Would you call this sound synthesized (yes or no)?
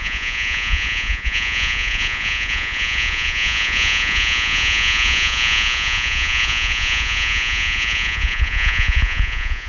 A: yes